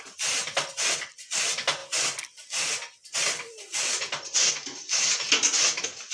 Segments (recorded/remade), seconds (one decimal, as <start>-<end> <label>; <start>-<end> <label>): 0.0-6.1 recorded